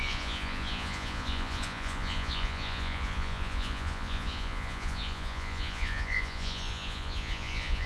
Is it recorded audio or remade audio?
remade